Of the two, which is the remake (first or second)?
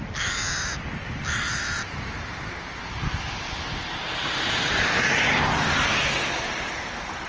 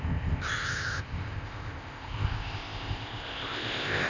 second